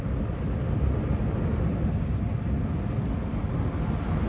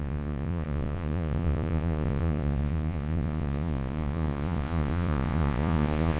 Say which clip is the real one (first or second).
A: first